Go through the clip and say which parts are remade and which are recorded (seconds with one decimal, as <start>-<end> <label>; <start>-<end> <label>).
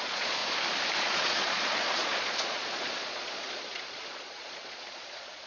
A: 0.0-0.4 remade; 0.4-1.0 recorded; 1.0-5.5 remade